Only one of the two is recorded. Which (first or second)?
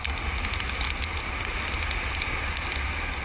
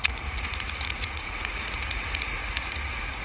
first